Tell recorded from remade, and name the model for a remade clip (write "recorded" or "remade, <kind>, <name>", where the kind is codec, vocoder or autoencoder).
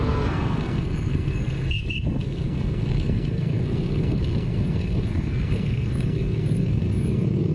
remade, codec, SNAC